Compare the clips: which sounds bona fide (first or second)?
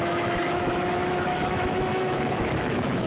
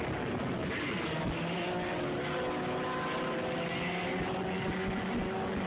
second